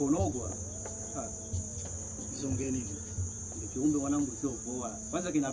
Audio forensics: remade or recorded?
remade